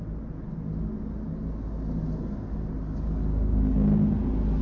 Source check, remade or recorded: recorded